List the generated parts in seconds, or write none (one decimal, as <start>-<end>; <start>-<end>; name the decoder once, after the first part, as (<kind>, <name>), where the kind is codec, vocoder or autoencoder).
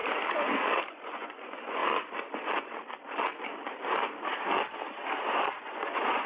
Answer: 0.9-1.8 (vocoder, Vocos); 5.5-6.3